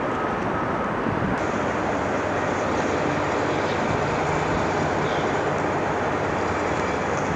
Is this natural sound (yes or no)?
yes